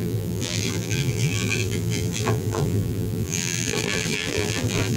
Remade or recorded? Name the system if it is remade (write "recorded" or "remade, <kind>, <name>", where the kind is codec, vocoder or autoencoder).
remade, vocoder, BigVGAN v2